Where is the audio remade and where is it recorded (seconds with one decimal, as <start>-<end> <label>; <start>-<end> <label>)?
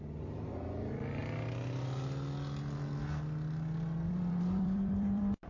0.0-1.2 remade; 1.2-4.1 recorded; 4.1-5.5 remade